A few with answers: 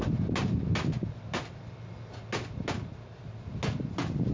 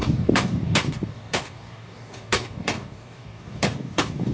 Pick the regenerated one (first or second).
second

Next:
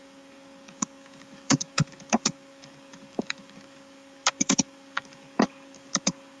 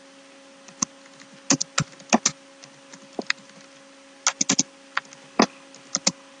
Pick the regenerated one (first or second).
first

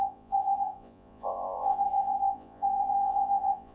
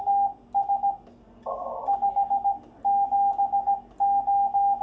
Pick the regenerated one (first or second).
first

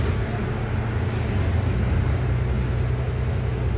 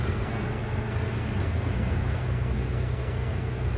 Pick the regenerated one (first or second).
second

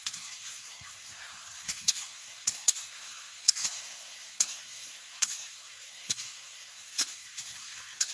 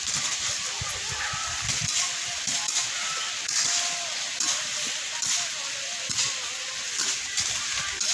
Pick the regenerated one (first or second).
first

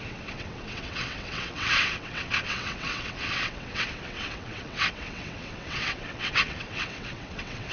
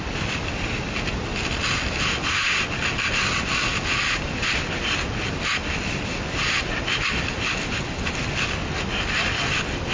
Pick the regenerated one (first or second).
first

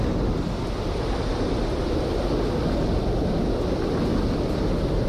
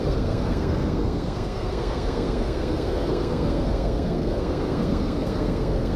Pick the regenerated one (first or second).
second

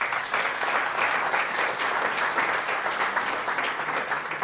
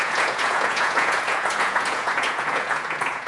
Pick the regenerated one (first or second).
second